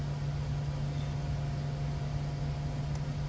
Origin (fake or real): real